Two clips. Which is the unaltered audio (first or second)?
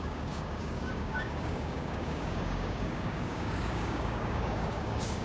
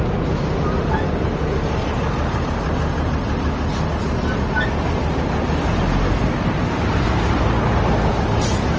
second